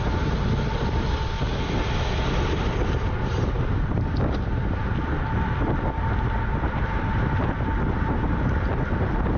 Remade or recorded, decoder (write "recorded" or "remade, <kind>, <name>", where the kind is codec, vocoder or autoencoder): recorded